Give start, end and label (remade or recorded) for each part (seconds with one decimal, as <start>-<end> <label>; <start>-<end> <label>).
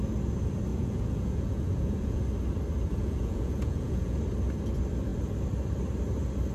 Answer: 0.0-0.7 recorded; 0.7-2.2 remade; 2.2-2.9 recorded; 2.9-4.2 remade; 4.2-6.5 recorded